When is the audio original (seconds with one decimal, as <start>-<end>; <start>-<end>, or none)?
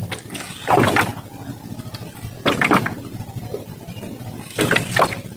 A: 0.0-5.4